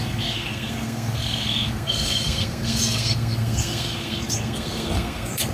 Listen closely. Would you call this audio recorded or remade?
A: remade